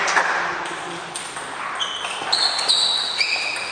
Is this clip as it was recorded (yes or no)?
yes